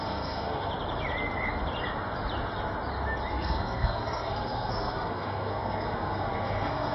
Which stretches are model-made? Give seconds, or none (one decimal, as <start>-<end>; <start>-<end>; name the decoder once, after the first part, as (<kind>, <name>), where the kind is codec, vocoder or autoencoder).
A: 0.0-0.7 (codec, SNAC); 3.3-6.9